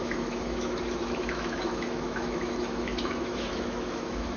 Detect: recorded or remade remade